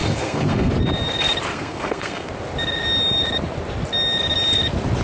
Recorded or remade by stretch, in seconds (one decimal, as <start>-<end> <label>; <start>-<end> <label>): 0.0-0.7 remade; 0.7-1.5 recorded; 1.5-2.3 remade; 2.3-5.0 recorded